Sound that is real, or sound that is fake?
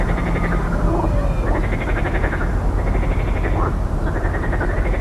real